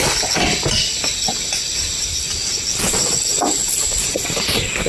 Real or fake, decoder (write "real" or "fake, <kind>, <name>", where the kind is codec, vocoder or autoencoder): real